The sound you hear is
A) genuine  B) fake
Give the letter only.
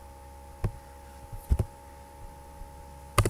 A